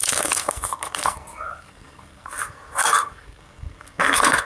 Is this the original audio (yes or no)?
no